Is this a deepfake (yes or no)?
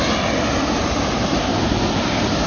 no